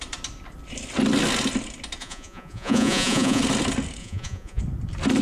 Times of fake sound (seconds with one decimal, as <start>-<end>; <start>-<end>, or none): 2.0-3.4; 4.0-4.6